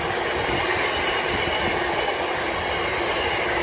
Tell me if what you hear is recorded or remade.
recorded